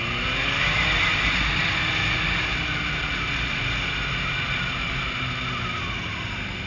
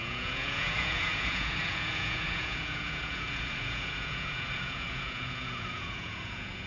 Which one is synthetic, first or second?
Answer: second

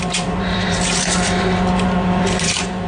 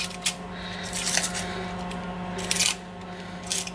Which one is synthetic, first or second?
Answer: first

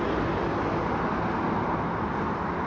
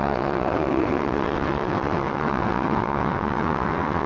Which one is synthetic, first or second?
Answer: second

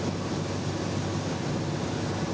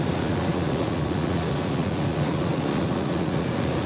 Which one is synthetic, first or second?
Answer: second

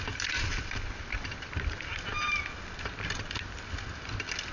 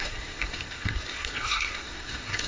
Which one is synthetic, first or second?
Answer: second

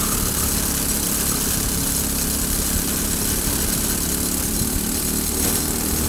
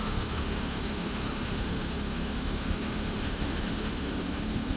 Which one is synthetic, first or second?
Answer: second